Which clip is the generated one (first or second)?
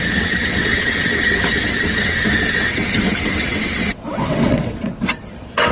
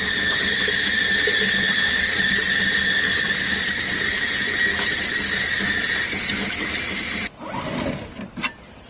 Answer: first